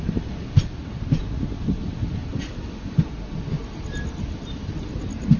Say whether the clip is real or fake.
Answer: real